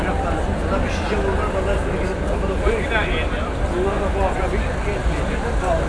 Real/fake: real